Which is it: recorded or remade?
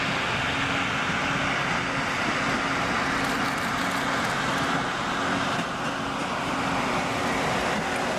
recorded